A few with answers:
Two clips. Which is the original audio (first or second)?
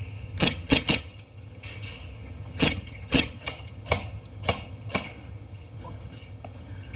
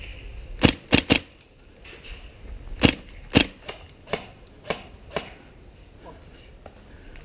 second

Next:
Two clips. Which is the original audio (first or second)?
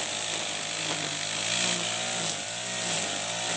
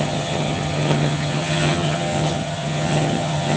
first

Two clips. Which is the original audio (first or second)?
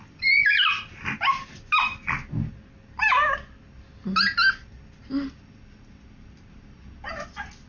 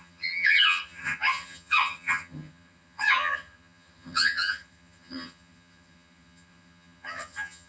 first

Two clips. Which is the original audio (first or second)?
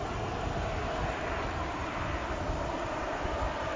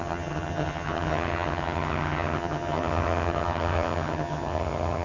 first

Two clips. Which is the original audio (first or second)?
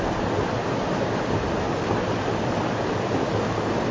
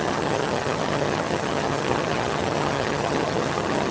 first